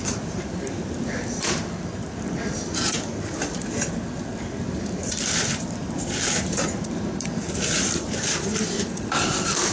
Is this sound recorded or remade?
remade